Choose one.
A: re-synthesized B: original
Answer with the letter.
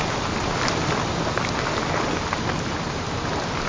B